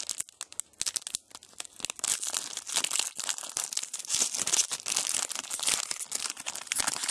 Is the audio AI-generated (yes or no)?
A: no